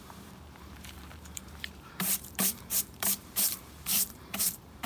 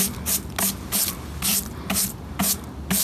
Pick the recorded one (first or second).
second